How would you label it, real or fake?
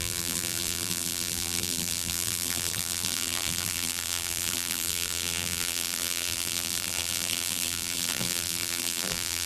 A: fake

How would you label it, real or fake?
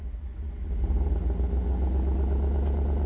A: real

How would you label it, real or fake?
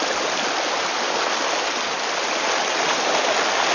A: real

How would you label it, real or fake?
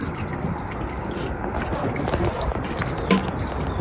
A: real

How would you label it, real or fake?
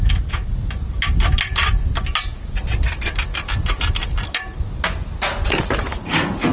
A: real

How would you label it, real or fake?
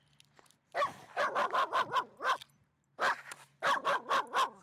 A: real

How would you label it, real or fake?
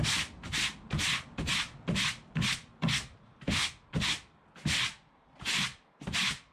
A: real